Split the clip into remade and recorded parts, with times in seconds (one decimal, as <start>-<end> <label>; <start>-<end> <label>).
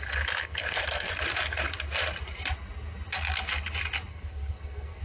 0.0-0.4 recorded; 0.4-1.1 remade; 1.1-4.1 recorded; 4.1-5.0 remade